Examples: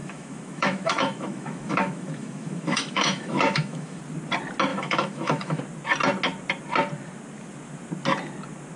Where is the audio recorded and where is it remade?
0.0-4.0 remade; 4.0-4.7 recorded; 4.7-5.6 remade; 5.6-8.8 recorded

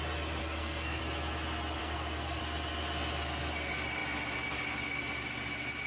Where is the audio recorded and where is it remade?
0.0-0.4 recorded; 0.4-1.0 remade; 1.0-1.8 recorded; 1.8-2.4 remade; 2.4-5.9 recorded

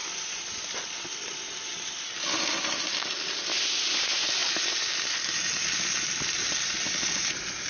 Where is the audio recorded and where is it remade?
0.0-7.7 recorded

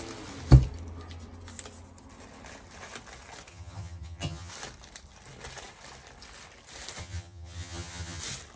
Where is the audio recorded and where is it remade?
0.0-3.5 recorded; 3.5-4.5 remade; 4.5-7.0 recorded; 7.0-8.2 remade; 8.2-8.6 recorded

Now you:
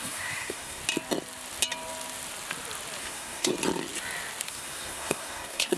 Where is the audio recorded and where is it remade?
0.0-0.8 remade; 0.8-3.0 recorded; 3.0-3.5 remade; 3.5-4.5 recorded; 4.5-5.8 remade